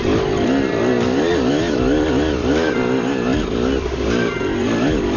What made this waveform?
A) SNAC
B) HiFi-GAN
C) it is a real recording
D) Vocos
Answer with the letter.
C